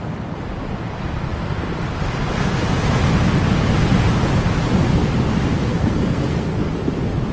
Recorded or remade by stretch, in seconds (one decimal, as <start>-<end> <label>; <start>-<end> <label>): 0.0-5.5 recorded; 5.5-6.7 remade; 6.7-7.3 recorded

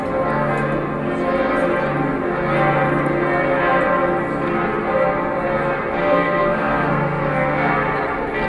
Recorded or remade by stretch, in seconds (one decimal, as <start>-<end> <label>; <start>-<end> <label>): 0.0-6.0 recorded; 6.0-7.7 remade; 7.7-8.5 recorded

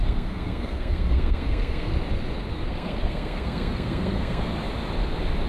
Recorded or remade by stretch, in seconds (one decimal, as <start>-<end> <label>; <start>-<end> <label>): 0.0-1.9 remade; 1.9-2.5 recorded; 2.5-4.5 remade; 4.5-5.5 recorded

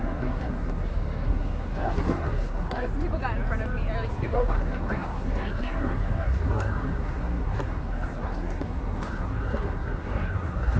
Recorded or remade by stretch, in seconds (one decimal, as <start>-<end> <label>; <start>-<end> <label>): 0.0-2.9 remade; 2.9-4.1 recorded; 4.1-10.8 remade

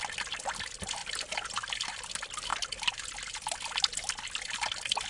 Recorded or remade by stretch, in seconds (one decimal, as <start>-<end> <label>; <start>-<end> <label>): 0.0-5.1 recorded

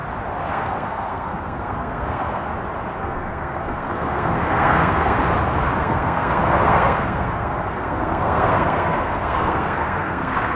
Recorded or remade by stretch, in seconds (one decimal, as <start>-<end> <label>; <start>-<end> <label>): 0.0-0.5 recorded; 0.5-2.5 remade; 2.5-3.0 recorded; 3.0-5.2 remade; 5.2-5.8 recorded; 5.8-10.6 remade